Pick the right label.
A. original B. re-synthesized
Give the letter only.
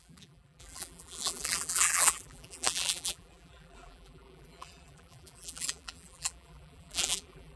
B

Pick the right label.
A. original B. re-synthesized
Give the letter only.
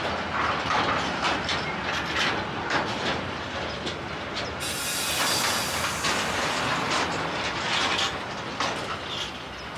A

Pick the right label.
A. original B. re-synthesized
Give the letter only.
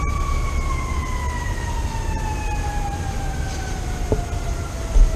A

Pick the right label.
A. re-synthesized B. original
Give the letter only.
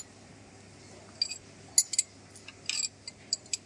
B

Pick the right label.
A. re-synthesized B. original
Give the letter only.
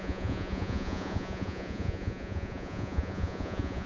A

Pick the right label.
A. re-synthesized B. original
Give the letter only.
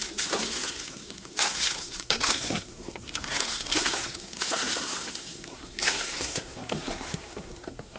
A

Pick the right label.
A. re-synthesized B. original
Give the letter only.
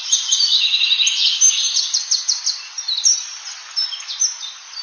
B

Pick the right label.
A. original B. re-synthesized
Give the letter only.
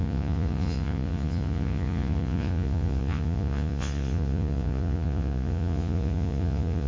B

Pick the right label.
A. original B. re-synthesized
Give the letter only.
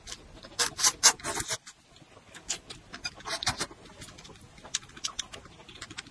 A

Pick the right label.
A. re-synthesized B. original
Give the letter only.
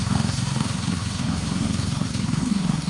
A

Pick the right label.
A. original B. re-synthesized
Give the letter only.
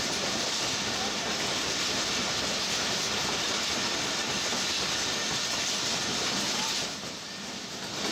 A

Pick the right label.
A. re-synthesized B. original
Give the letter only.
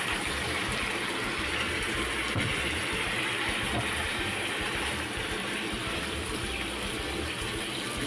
A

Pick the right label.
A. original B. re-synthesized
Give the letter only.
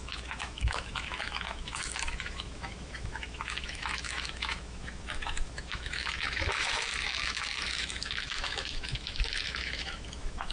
B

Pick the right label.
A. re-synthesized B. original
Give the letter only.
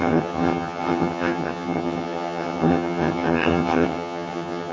A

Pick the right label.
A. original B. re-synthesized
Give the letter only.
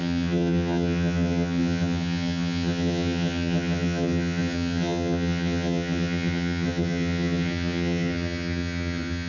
B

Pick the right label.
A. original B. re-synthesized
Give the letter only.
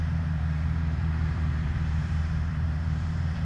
B